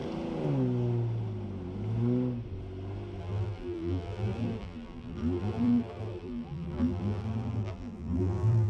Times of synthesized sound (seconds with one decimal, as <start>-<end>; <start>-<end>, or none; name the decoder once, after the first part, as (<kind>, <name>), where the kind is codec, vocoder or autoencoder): 3.2-8.7 (vocoder, BigVGAN v2)